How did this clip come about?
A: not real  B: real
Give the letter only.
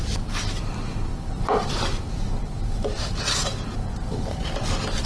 A